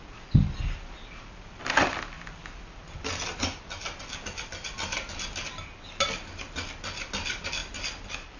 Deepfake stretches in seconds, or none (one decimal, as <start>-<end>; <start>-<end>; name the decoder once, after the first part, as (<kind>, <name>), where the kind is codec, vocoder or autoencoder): none